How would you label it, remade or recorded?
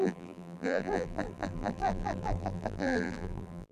remade